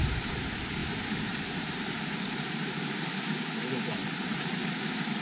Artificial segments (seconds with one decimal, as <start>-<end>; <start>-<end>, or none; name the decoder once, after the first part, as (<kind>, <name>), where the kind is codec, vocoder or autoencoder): 0.0-5.2 (vocoder, BigVGAN v2)